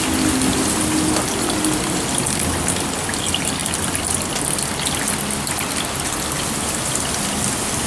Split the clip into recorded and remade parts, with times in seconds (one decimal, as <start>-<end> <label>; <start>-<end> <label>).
0.0-7.9 recorded